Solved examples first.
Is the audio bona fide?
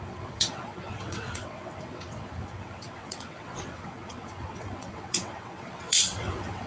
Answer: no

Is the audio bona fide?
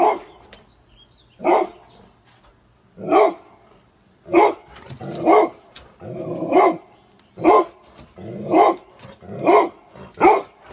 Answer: yes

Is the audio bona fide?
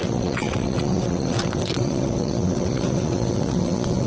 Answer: no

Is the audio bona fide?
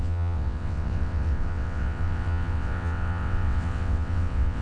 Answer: no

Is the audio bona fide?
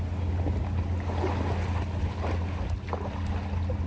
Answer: yes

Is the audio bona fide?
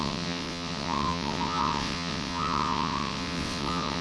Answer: no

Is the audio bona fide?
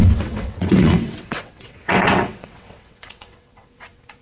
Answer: no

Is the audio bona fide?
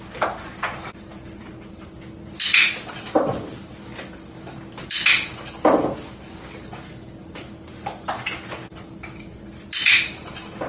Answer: yes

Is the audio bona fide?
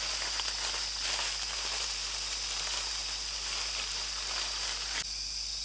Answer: yes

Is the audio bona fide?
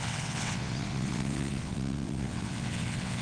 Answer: no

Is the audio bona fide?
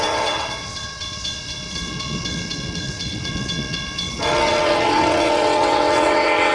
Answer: no